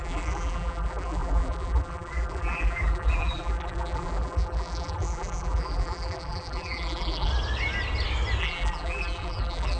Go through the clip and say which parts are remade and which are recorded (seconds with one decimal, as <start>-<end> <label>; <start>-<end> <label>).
0.0-7.3 remade; 7.3-8.4 recorded; 8.4-9.8 remade